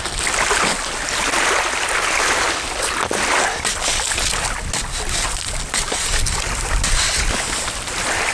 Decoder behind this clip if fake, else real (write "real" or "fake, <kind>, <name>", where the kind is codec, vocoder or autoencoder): real